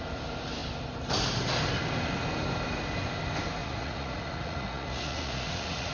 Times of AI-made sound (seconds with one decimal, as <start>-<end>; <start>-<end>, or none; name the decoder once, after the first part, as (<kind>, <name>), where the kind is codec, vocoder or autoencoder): 3.6-5.9 (vocoder, Vocos)